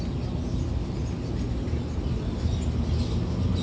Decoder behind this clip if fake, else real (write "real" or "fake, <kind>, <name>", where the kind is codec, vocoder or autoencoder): real